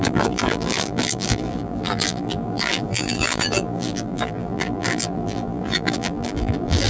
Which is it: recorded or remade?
remade